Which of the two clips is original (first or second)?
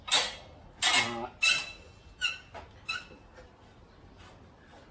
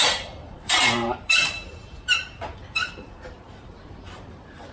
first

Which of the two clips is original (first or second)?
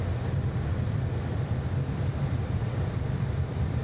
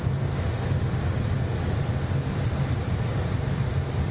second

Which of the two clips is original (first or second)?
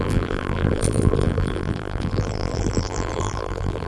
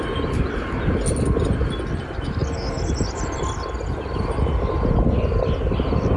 second